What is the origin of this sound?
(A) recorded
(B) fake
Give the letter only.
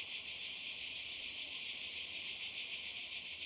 B